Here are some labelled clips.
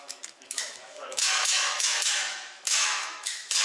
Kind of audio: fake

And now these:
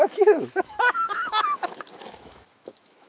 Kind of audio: fake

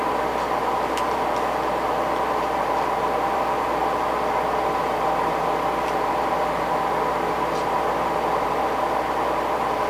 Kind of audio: real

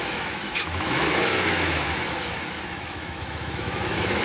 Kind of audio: fake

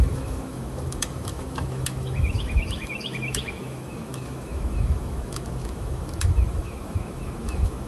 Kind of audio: fake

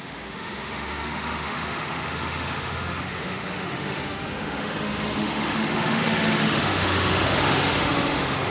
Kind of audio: fake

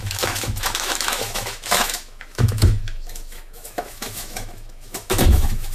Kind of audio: fake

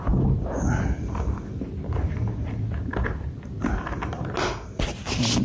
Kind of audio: real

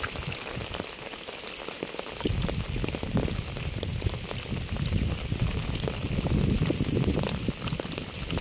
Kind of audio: real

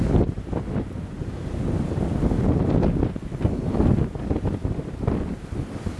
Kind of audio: real